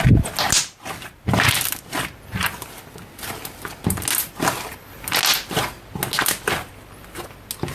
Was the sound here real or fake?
real